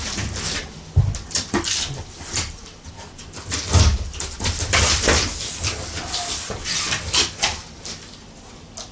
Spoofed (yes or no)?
no